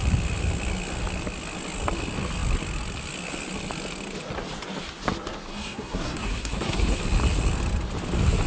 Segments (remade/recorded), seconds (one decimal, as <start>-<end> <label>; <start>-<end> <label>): 0.0-5.5 recorded; 5.5-7.0 remade; 7.0-8.5 recorded